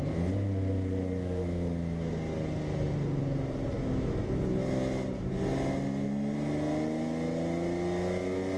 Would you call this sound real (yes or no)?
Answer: yes